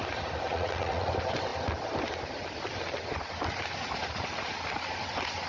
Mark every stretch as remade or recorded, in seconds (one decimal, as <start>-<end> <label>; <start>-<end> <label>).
0.0-0.5 recorded; 0.5-1.1 remade; 1.1-5.5 recorded